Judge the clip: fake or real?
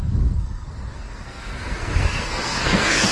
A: fake